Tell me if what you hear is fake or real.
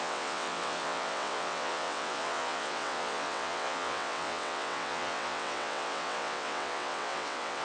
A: fake